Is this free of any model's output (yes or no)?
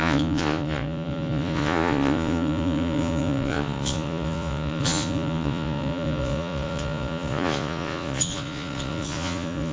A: no